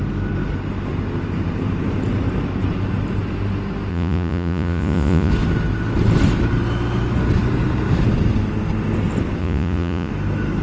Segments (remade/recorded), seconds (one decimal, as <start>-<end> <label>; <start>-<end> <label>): 0.0-3.9 recorded; 3.9-5.3 remade; 5.3-9.4 recorded; 9.4-10.1 remade; 10.1-10.6 recorded